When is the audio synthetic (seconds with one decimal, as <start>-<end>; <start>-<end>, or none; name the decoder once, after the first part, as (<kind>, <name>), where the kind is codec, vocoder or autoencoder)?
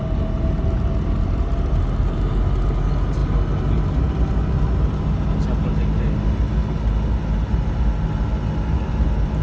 none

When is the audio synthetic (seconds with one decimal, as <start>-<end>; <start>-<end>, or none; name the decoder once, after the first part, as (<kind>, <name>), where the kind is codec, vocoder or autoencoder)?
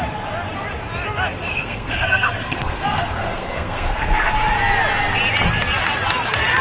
1.5-4.3 (codec, SNAC)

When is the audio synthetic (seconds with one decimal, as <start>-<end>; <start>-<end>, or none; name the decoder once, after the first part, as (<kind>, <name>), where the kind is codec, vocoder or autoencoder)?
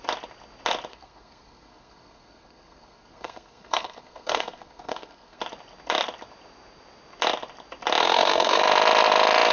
0.9-5.4 (codec, SNAC); 8.0-8.6